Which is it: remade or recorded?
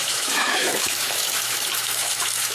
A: remade